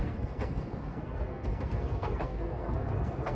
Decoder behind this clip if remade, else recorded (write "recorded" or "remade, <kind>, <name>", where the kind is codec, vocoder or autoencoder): remade, codec, SNAC